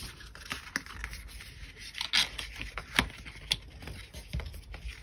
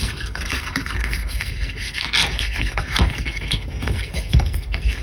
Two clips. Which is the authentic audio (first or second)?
first